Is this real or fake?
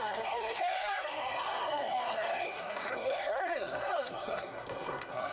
fake